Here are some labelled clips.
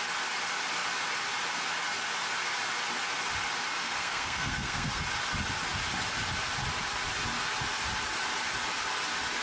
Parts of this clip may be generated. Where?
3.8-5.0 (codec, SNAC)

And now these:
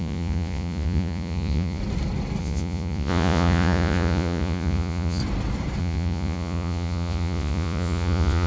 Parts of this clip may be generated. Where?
0.0-1.8 (vocoder, Vocos); 2.4-5.2; 5.8-8.5